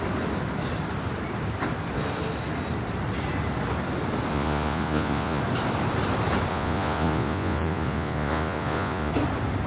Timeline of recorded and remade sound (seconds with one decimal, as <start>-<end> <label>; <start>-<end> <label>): 0.0-4.3 recorded; 4.3-5.4 remade; 5.4-6.5 recorded; 6.5-9.1 remade; 9.1-9.7 recorded